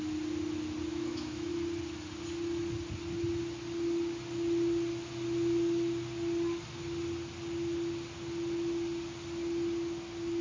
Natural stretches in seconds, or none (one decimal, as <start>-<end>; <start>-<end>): 0.0-0.9; 1.5-10.4